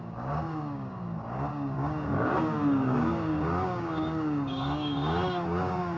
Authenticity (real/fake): fake